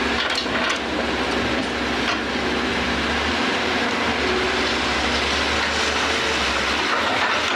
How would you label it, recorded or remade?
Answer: recorded